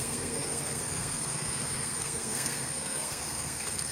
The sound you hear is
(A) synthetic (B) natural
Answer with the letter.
A